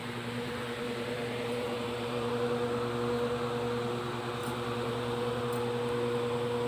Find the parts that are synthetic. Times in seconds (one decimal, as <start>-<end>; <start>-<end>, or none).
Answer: 0.0-2.3; 4.4-5.4